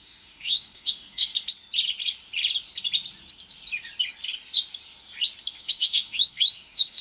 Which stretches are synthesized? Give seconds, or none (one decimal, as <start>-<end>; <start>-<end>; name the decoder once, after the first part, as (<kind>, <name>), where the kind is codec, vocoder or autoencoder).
0.0-1.3 (autoencoder, DAC-VAE); 5.5-7.0